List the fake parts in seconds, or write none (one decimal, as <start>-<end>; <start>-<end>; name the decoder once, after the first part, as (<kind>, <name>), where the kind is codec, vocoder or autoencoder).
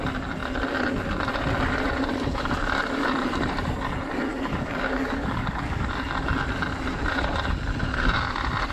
4.3-5.9 (codec, DAC)